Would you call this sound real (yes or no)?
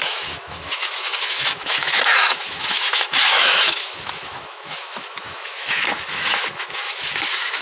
no